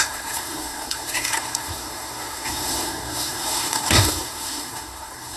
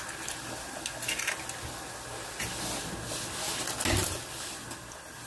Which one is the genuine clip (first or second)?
second